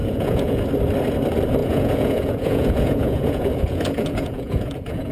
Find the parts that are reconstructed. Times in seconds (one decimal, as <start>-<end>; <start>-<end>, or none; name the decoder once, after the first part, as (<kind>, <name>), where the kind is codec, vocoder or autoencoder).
0.0-0.6 (vocoder, Vocos); 1.6-5.1